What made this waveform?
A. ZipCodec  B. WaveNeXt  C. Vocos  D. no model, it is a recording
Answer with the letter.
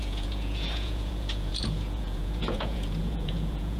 C